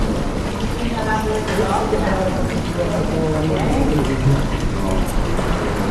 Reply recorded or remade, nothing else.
recorded